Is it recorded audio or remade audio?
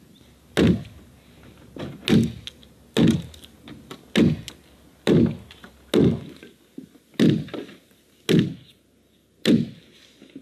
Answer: recorded